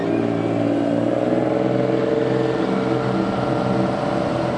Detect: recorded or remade recorded